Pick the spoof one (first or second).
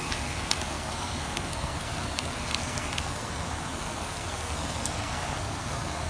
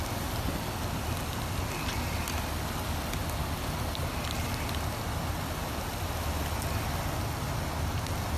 first